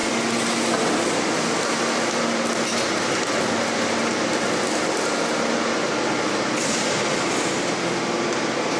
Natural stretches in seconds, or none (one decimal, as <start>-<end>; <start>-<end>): 0.0-8.8